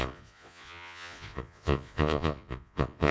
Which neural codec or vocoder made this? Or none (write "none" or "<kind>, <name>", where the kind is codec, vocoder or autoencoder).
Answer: vocoder, Vocos